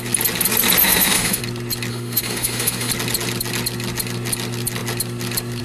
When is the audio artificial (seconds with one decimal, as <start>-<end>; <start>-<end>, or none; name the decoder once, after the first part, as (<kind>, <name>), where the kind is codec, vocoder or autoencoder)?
0.8-1.4 (autoencoder, DAC-VAE); 1.9-2.9